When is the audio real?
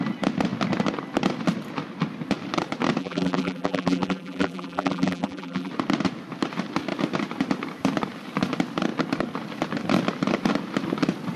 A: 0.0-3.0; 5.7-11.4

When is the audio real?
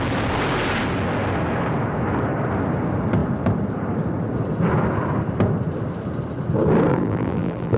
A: 0.0-6.9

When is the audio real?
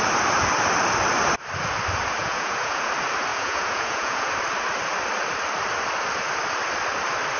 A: 0.0-2.2; 2.9-3.3; 4.3-7.4